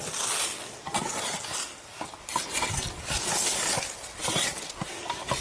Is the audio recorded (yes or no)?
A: yes